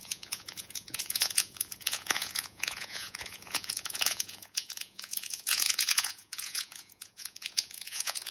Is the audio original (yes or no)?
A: no